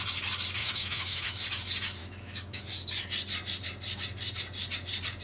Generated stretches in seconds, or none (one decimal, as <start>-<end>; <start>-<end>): 0.6-1.3; 2.0-2.6